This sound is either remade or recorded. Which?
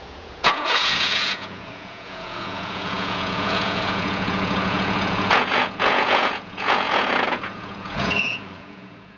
remade